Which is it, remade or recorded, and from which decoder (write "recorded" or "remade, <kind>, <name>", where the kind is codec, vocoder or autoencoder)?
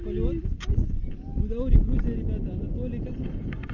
recorded